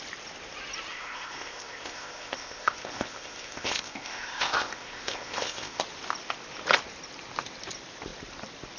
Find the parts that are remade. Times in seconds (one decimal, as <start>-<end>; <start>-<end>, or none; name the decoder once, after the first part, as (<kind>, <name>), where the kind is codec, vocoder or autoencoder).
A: 0.9-5.8 (codec, ZipCodec)